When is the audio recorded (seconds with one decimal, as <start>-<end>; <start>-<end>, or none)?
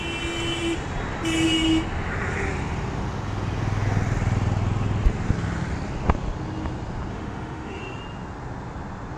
0.0-7.1; 7.8-9.2